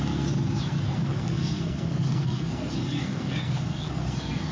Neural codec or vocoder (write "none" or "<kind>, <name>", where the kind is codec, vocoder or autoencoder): codec, SNAC